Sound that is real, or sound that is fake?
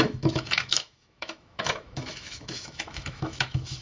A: fake